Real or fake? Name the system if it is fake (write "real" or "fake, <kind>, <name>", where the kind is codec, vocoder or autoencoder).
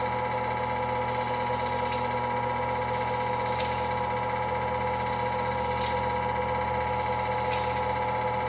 real